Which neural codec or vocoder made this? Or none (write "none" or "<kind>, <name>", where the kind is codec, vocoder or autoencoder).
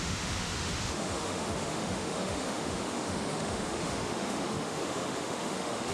autoencoder, DAC-VAE